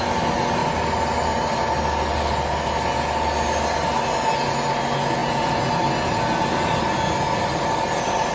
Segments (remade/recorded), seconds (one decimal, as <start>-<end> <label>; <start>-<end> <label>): 0.0-8.3 recorded